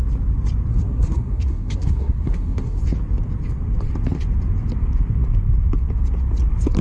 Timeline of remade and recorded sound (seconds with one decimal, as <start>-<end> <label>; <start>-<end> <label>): 0.0-0.7 recorded; 0.7-2.8 remade; 2.8-6.8 recorded